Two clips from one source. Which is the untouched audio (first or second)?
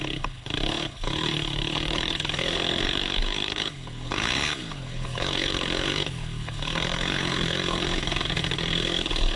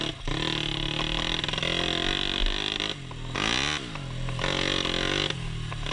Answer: second